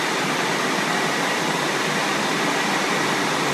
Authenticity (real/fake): real